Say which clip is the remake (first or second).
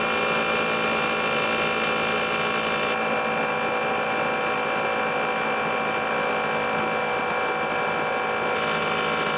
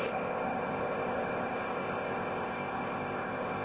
second